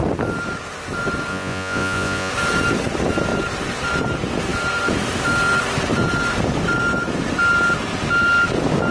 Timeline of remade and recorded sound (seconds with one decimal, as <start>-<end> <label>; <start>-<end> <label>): 0.0-1.3 recorded; 1.3-2.3 remade; 2.3-8.9 recorded